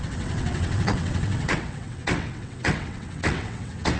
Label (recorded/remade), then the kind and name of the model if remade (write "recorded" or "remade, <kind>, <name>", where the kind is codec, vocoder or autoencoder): remade, vocoder, WaveNeXt